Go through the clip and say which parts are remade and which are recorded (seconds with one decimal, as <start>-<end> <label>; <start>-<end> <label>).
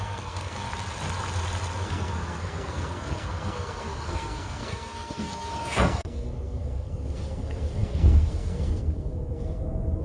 0.0-0.7 remade; 0.7-1.8 recorded; 1.8-10.0 remade